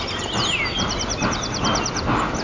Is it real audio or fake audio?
real